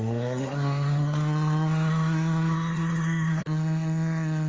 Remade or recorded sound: remade